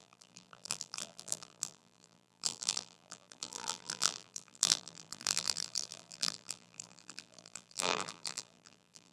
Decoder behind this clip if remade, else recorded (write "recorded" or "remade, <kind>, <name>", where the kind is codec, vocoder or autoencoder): remade, vocoder, BigVGAN v2